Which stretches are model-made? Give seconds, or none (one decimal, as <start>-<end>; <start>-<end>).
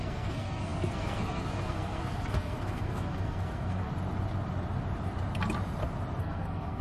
0.0-3.9; 6.2-6.8